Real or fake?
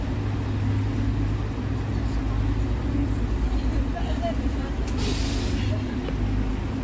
real